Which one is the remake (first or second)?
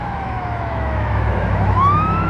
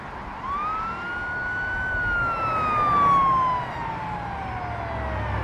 first